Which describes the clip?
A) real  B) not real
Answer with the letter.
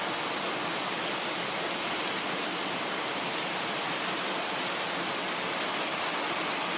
A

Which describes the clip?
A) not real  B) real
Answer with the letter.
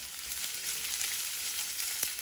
A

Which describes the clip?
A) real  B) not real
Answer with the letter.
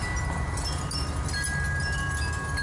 A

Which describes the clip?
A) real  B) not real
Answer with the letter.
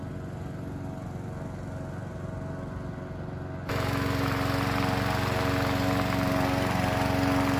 A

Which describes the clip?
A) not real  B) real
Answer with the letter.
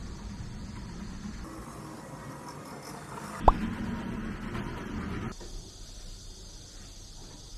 B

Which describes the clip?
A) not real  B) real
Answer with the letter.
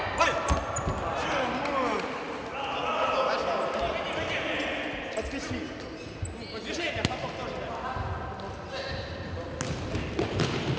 B